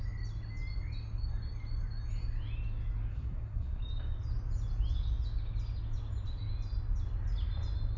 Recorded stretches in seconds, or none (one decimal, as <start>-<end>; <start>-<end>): 0.0-3.1; 3.8-8.0